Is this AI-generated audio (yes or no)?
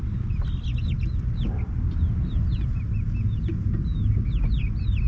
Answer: no